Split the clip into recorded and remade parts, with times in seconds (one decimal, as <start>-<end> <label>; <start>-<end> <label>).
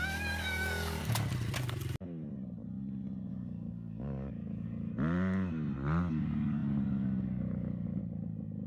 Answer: 0.0-1.0 remade; 1.0-3.3 recorded; 3.3-4.9 remade; 4.9-6.1 recorded; 6.1-8.0 remade; 8.0-8.7 recorded